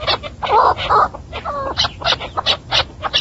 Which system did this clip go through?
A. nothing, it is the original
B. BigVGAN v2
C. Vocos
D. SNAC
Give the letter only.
A